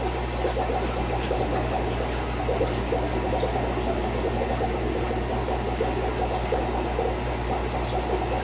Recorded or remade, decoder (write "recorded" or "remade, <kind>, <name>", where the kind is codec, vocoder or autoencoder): recorded